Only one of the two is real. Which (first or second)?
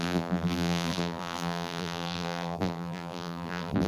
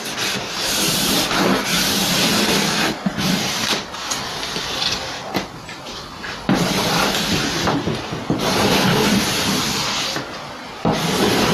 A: second